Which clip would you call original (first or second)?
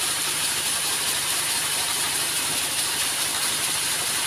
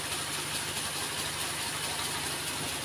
second